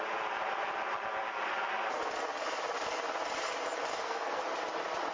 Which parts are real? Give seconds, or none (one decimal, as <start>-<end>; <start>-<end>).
0.0-3.9; 4.4-5.1